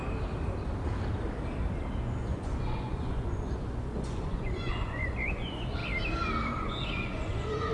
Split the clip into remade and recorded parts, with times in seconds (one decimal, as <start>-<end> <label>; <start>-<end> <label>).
0.0-2.0 recorded; 2.0-5.8 remade; 5.8-6.5 recorded; 6.5-7.7 remade

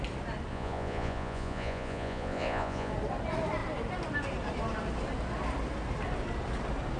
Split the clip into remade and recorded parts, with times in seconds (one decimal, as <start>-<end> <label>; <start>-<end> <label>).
0.0-0.5 recorded; 0.5-2.9 remade; 2.9-7.0 recorded

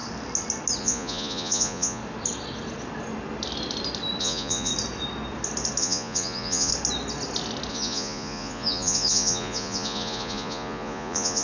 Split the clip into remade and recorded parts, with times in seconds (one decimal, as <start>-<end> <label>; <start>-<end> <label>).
0.0-0.8 recorded; 0.8-2.0 remade; 2.0-4.2 recorded; 4.2-4.7 remade; 4.7-5.8 recorded; 5.8-6.7 remade; 6.7-7.7 recorded; 7.7-11.4 remade

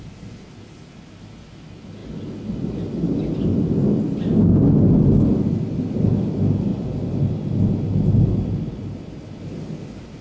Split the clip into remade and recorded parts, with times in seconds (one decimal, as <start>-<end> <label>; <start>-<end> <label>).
0.0-10.2 recorded

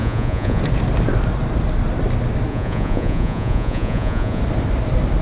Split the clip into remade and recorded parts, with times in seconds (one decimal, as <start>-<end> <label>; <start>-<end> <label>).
0.0-0.6 remade; 0.6-2.5 recorded; 2.5-4.4 remade; 4.4-5.2 recorded